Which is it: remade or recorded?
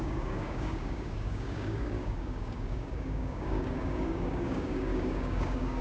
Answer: remade